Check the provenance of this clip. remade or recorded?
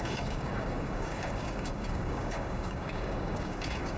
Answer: remade